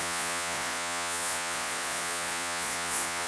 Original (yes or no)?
no